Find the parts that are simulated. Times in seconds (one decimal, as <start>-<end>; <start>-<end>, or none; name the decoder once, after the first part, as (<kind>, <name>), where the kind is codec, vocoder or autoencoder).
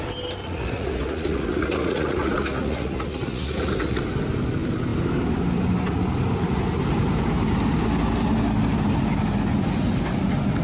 0.4-4.0 (vocoder, Vocos)